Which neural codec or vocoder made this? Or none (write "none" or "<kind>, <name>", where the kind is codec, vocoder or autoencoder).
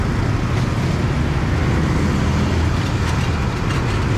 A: none